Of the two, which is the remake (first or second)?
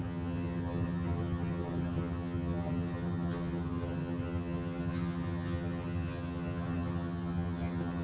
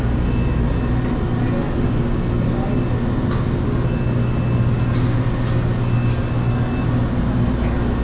first